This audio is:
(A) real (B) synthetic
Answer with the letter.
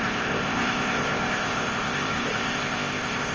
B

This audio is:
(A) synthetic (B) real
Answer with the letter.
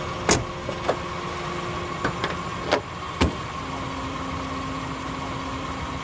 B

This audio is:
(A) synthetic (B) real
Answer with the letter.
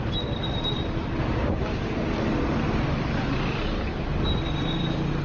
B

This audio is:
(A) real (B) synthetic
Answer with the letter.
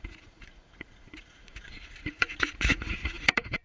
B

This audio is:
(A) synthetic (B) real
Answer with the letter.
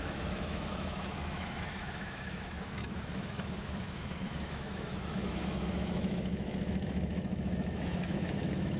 A